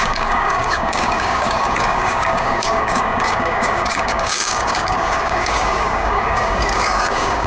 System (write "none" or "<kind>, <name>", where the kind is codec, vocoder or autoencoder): codec, DAC